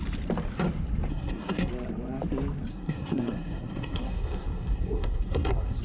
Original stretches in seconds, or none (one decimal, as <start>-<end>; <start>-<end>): 0.0-1.1; 1.7-2.7